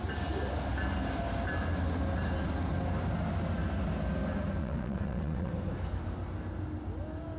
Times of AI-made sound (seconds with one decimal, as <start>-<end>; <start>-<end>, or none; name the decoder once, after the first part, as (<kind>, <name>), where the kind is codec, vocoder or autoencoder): 4.6-5.5 (vocoder, WaveNeXt)

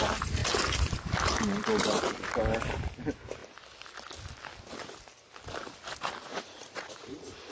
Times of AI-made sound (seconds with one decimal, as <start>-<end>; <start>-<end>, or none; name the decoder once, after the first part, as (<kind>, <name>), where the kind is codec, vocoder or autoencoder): 6.3-7.5 (vocoder, Vocos)

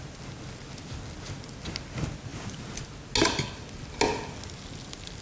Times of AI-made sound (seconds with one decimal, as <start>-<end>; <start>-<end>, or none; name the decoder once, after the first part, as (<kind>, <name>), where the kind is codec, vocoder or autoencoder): none

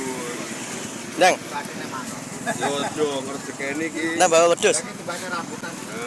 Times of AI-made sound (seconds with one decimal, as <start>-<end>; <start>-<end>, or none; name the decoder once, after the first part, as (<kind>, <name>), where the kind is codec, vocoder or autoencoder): none

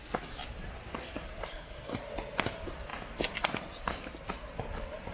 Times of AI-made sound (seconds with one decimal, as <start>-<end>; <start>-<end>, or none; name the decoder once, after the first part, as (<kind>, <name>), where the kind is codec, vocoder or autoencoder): 1.5-2.0 (codec, SNAC)